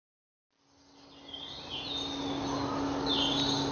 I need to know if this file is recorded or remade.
recorded